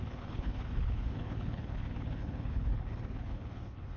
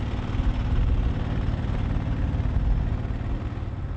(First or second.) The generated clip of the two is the first